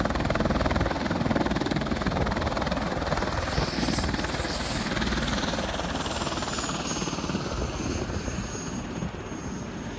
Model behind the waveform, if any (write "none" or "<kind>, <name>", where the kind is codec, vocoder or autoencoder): none